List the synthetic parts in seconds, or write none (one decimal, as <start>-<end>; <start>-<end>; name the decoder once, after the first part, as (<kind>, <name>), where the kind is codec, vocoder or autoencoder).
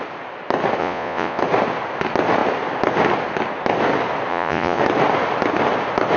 0.8-1.4 (vocoder, Vocos); 4.3-4.8